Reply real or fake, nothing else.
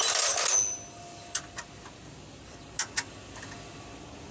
real